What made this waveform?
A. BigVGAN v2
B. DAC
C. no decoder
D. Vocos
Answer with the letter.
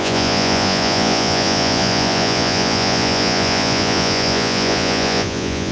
D